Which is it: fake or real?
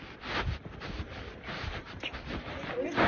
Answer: real